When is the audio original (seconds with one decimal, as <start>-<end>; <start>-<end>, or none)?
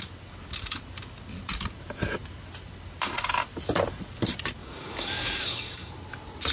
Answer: 0.0-4.6; 5.9-6.5